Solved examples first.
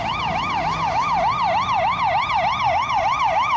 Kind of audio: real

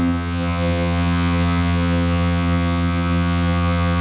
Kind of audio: fake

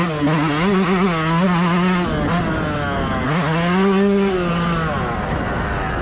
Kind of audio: real